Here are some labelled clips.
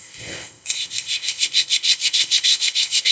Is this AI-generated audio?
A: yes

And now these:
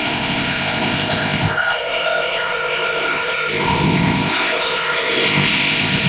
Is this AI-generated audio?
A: yes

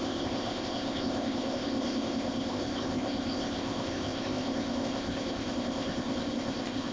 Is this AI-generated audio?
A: yes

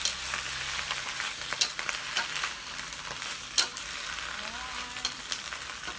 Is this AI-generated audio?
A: no